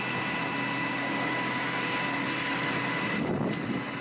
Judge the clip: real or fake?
real